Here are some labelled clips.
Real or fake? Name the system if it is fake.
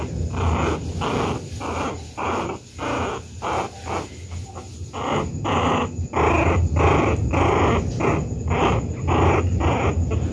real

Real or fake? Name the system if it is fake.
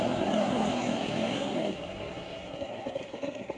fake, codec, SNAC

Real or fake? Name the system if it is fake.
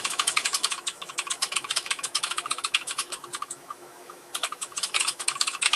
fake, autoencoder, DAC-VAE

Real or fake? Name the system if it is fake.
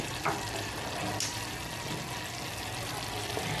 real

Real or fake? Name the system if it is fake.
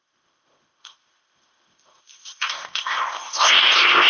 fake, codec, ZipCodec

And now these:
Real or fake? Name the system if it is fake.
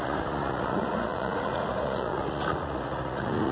fake, vocoder, Vocos